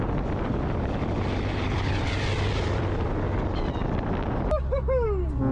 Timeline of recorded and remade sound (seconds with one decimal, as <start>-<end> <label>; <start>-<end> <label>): 0.0-5.5 recorded